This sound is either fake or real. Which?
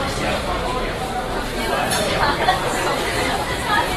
fake